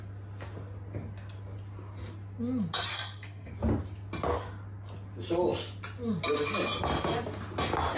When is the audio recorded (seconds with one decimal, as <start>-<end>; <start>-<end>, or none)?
0.0-2.9; 3.5-8.0